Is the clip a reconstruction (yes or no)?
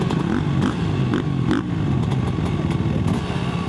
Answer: no